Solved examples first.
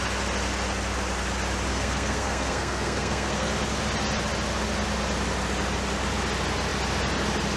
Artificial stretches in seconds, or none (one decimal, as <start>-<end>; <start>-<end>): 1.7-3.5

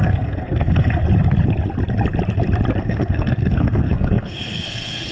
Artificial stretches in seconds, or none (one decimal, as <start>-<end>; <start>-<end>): 0.0-1.0; 2.8-5.1

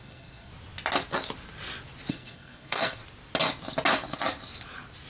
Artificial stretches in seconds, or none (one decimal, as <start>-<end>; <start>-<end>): 0.0-0.5; 2.1-3.0

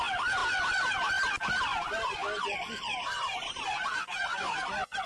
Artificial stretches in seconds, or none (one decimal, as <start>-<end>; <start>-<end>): none

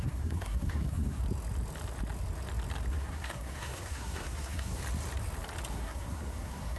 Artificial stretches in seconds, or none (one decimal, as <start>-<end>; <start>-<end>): 0.0-1.2; 2.9-4.8; 5.7-6.8

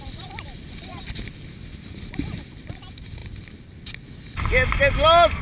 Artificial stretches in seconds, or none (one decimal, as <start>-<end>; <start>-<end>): none

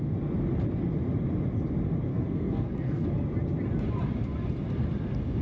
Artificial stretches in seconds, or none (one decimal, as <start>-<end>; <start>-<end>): 2.1-3.1